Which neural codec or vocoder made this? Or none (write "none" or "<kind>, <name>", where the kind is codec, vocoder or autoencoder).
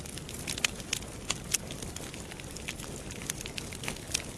none